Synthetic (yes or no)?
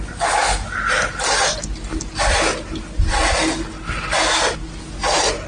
no